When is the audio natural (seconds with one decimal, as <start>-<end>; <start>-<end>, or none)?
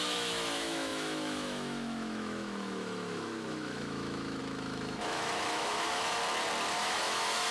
6.2-6.8